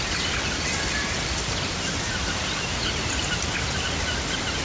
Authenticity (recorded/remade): recorded